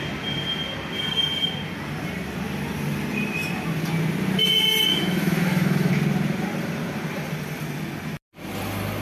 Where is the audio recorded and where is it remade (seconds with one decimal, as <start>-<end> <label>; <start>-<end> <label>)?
0.0-4.9 recorded; 4.9-5.9 remade; 5.9-9.0 recorded